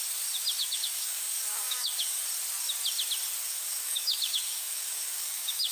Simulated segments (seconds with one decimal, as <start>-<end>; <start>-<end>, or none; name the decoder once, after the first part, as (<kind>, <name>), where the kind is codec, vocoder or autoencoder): 0.6-2.2 (codec, DAC); 3.4-5.7

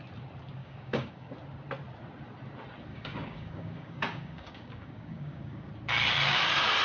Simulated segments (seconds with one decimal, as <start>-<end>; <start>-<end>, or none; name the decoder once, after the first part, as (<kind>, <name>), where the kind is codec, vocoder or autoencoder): 0.6-1.3 (codec, DAC); 2.9-5.7

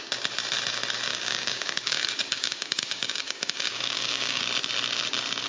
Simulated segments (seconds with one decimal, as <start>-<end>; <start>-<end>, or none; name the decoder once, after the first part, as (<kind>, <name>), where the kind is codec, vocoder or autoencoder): 1.1-4.4 (codec, DAC)

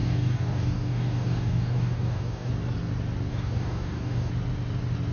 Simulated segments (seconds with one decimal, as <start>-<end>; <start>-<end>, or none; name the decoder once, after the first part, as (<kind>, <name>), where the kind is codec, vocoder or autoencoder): 0.0-2.5 (codec, DAC); 3.3-4.3

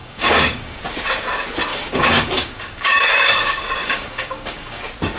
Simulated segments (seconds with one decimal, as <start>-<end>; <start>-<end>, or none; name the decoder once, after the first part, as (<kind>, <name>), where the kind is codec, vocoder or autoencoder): 0.0-0.8 (codec, DAC); 1.7-4.8

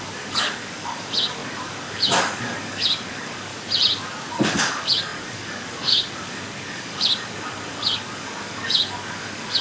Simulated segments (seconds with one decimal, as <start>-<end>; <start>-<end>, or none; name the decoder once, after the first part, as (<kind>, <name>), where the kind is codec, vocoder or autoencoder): 0.0-3.5 (codec, DAC); 4.3-9.6

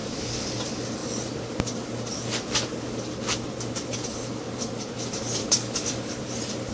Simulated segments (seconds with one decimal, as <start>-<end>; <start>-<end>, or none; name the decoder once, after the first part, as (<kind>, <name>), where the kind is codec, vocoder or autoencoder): 0.0-0.5 (codec, DAC); 5.4-6.2